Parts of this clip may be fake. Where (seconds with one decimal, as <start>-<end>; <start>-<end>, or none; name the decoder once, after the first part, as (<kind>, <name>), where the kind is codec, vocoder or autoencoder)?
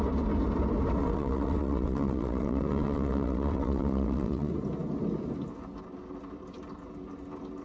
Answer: 1.0-4.5 (vocoder, WaveNeXt)